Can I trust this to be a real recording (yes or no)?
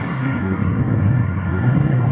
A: no